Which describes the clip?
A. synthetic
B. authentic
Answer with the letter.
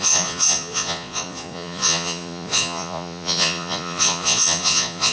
A